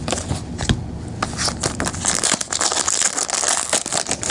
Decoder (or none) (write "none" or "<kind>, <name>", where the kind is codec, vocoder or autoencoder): none